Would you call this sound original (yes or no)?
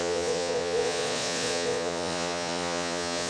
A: no